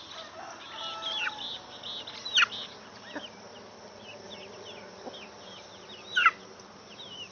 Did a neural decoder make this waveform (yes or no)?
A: no